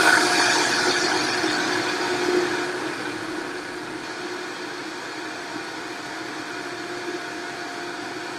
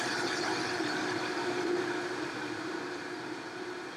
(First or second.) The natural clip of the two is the first